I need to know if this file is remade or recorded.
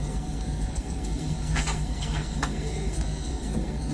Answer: remade